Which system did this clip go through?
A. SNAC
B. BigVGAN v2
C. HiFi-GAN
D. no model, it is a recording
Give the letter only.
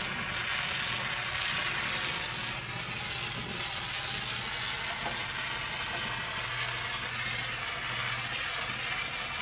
D